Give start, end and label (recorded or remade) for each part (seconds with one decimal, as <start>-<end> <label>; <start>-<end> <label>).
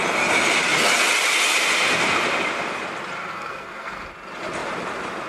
0.0-3.2 recorded; 3.2-4.0 remade; 4.0-5.3 recorded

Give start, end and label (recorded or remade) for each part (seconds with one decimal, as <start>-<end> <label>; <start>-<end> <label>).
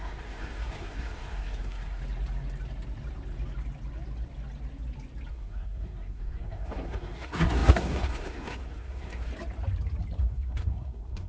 0.0-2.0 remade; 2.0-5.3 recorded; 5.3-9.3 remade; 9.3-10.2 recorded; 10.2-11.3 remade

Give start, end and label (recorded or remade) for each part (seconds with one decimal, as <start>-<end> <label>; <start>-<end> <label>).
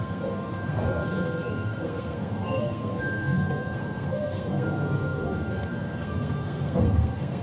0.0-7.4 remade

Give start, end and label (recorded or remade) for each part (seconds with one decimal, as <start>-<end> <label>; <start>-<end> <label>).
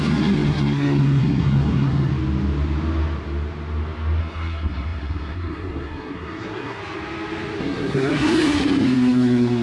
0.0-2.1 remade; 2.1-4.2 recorded; 4.2-6.8 remade; 6.8-7.6 recorded; 7.6-9.6 remade